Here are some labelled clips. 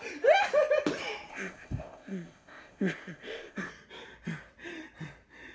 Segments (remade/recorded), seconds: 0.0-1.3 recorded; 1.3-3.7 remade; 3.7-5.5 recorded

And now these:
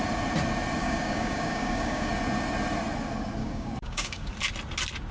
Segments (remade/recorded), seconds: 0.0-0.8 recorded; 0.8-2.1 remade; 2.1-3.4 recorded; 3.4-4.3 remade; 4.3-5.1 recorded